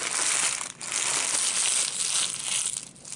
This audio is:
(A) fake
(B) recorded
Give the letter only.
B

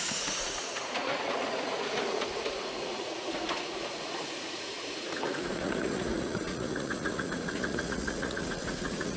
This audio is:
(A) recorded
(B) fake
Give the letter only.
B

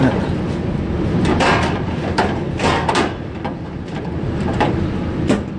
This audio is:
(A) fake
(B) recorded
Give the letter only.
A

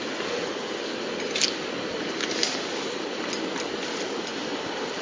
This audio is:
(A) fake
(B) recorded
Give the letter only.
B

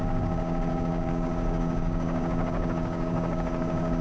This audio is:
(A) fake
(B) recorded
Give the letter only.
A